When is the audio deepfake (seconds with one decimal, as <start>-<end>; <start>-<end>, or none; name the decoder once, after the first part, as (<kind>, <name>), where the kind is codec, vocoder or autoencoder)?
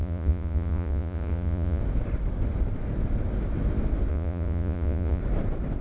0.0-1.8 (vocoder, Vocos); 4.1-5.2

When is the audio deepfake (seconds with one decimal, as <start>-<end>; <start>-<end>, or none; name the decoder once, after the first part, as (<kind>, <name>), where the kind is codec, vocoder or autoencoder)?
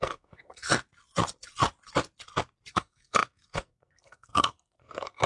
0.0-0.7 (codec, SNAC); 2.7-5.3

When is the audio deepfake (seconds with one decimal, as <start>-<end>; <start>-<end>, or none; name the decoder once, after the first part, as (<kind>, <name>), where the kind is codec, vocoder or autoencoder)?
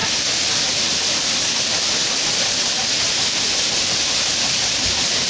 0.0-1.0 (vocoder, BigVGAN v2)